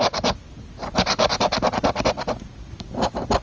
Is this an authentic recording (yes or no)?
yes